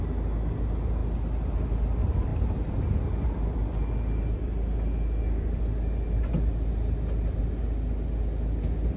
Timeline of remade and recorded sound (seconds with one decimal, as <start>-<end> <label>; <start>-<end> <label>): 0.0-1.0 recorded; 1.0-1.6 remade; 1.6-2.3 recorded; 2.3-7.4 remade; 7.4-9.0 recorded